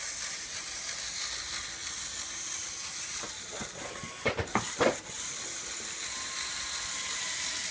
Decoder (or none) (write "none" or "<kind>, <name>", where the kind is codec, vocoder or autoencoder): none